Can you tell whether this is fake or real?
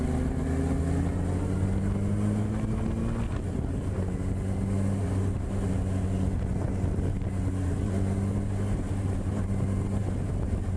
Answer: real